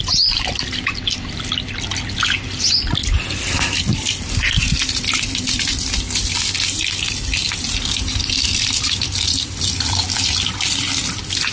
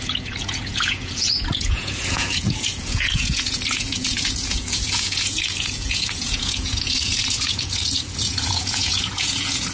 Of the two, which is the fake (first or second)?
second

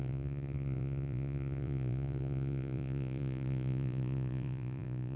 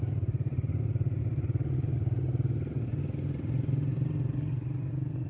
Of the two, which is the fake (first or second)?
first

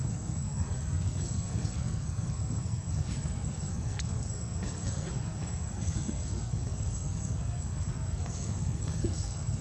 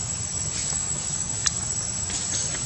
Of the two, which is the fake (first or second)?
first